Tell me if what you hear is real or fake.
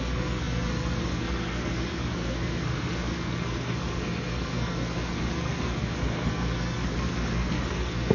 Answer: fake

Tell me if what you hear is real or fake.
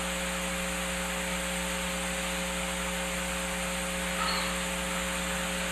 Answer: real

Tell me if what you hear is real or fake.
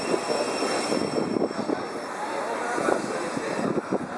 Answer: real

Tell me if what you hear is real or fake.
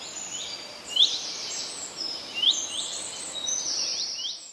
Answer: real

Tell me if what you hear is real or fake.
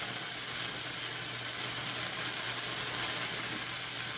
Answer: real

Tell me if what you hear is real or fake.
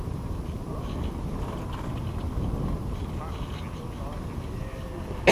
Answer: real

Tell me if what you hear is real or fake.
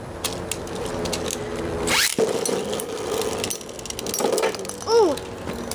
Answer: real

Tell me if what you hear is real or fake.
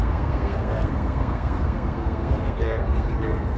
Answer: fake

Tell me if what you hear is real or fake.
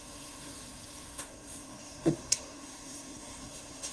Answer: fake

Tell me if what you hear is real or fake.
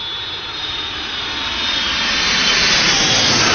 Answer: real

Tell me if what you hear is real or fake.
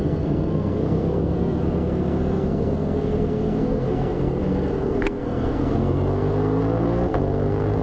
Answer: fake